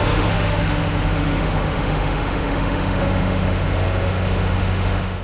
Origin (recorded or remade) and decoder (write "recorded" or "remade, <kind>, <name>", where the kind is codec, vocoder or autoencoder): remade, autoencoder, DAC-VAE